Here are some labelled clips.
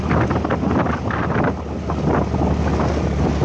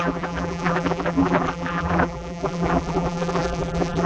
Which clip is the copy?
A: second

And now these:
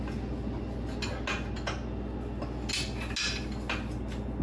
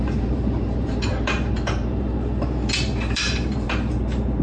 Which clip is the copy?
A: second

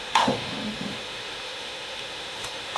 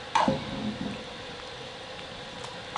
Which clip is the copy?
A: first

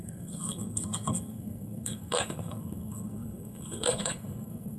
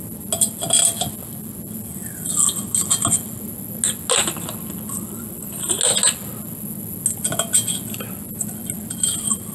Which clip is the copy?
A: first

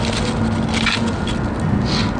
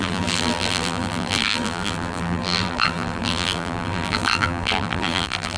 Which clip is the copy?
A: second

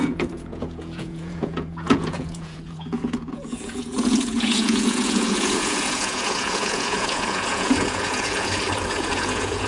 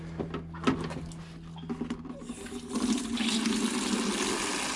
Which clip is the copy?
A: first